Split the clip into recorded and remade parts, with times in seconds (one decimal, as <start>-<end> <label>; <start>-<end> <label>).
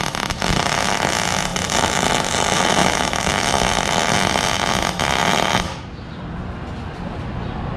0.0-2.8 recorded; 2.8-3.5 remade; 3.5-7.8 recorded